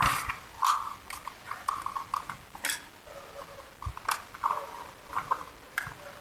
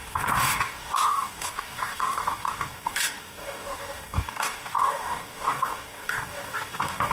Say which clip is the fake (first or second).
second